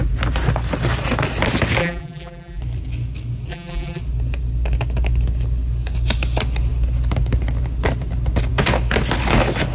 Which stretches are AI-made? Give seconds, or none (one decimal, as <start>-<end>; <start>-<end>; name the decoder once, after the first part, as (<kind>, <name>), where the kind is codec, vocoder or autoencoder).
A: 1.8-2.6 (vocoder, BigVGAN v2); 3.5-4.0